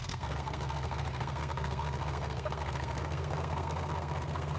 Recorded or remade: remade